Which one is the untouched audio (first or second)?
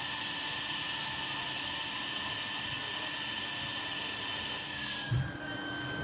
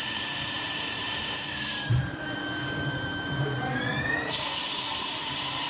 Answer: first